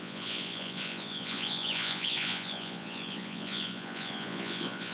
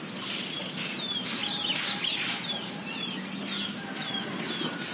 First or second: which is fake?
first